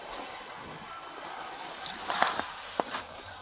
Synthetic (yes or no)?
no